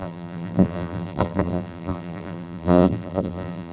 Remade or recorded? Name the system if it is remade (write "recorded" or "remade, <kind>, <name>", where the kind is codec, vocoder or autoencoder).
remade, vocoder, BigVGAN v2